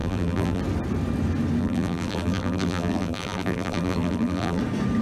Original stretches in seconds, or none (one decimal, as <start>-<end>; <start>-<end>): 0.6-1.6; 4.6-5.0